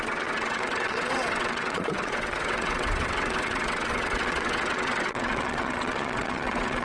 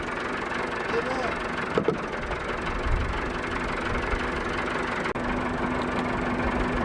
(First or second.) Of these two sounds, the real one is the second